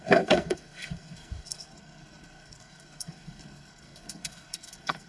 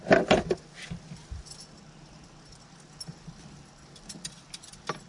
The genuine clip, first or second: second